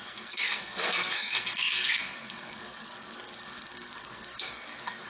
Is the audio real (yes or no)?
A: no